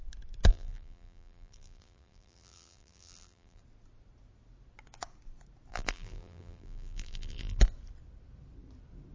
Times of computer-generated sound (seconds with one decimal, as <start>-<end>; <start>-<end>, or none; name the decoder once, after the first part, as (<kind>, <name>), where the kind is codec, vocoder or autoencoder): 0.5-3.6 (vocoder, BigVGAN v2); 5.7-7.6